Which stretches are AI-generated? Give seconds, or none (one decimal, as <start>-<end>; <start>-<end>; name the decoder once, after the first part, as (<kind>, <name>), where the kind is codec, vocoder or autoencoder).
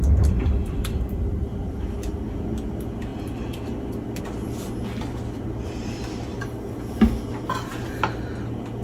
none